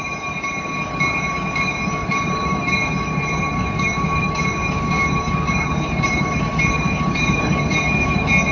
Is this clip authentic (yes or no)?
no